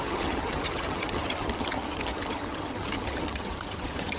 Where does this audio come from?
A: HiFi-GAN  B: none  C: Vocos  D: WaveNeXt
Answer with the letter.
A